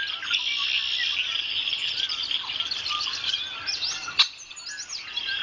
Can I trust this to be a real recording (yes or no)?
yes